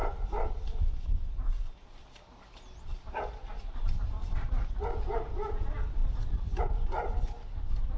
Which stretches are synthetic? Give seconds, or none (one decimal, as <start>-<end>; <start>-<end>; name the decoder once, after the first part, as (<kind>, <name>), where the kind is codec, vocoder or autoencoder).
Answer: none

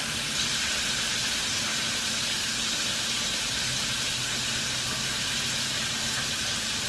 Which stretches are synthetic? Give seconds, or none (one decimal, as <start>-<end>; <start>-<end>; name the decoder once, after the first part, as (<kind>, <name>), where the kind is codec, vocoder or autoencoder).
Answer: none

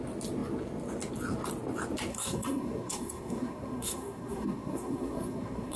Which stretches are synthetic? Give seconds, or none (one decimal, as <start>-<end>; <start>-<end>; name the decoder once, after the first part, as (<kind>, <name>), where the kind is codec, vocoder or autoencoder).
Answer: 2.1-5.8 (codec, SNAC)

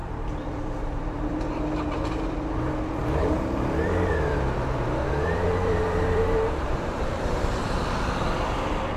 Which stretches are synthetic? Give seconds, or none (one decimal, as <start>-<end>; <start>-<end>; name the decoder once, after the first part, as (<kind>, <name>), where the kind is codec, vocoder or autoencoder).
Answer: 0.0-1.3 (vocoder, BigVGAN v2); 3.0-7.8

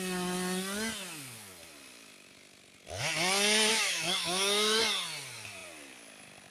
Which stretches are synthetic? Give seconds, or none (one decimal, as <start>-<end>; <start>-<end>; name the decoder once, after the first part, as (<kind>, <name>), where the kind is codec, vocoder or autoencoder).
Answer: 3.7-4.8 (autoencoder, DAC-VAE)

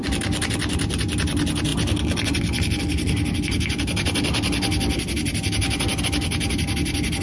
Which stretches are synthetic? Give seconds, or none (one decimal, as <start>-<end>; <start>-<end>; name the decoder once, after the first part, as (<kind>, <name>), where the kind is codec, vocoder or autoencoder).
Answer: none

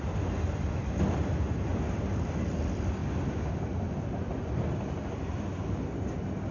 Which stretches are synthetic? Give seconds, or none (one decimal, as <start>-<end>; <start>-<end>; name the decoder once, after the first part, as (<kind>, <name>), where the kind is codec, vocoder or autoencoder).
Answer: 0.0-1.7 (vocoder, BigVGAN v2); 2.5-3.0; 5.1-6.5